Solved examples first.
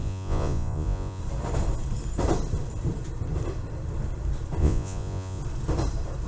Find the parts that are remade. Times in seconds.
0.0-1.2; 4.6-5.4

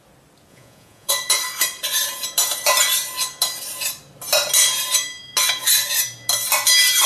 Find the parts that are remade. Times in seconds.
0.5-1.1

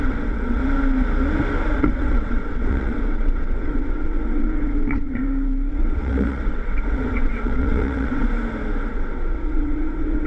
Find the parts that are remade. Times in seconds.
0.0-0.6; 1.8-5.2; 5.7-8.2; 8.9-10.3

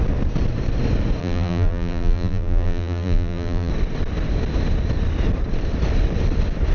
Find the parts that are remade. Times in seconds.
1.2-3.7

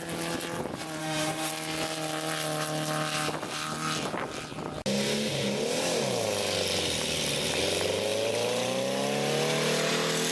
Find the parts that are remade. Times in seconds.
1.0-1.5

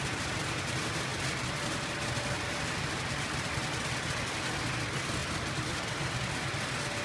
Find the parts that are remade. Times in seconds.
none

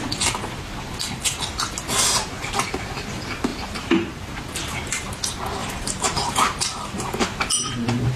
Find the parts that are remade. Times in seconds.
3.5-4.4; 5.6-7.5